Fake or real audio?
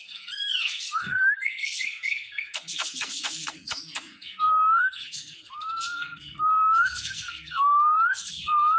fake